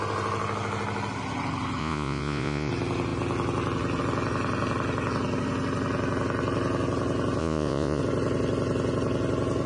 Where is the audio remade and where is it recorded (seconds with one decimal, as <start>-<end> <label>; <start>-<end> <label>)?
0.0-1.8 recorded; 1.8-2.7 remade; 2.7-7.4 recorded; 7.4-8.0 remade; 8.0-9.7 recorded